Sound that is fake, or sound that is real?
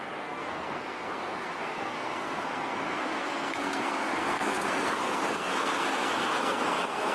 fake